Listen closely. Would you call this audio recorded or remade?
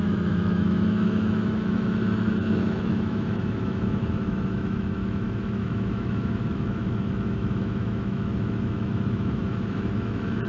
remade